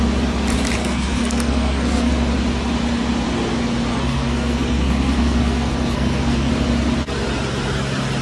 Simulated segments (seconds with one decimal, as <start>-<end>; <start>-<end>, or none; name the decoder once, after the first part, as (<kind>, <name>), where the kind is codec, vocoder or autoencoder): 0.8-2.1 (codec, SNAC); 3.9-6.5